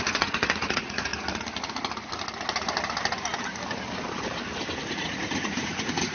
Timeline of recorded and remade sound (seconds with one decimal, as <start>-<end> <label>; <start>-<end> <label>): 0.0-1.1 remade; 1.1-4.8 recorded; 4.8-6.1 remade